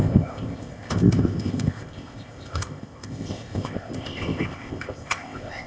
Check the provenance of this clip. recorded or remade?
remade